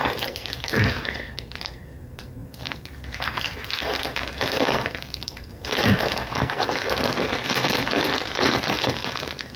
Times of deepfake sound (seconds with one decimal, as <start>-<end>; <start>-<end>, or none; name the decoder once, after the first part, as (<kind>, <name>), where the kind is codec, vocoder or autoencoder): 0.0-9.6 (codec, SNAC)